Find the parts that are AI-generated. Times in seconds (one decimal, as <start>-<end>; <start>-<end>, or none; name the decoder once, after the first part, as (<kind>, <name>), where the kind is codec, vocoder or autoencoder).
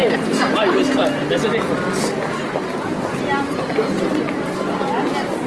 none